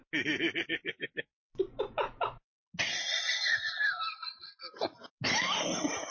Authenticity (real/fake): real